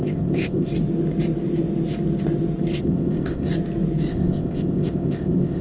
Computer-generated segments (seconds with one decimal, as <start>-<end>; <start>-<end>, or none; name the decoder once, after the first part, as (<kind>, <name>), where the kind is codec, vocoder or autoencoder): 0.0-0.7 (codec, ZipCodec); 2.8-3.5; 4.1-5.6